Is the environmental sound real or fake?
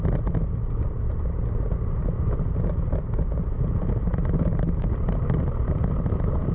real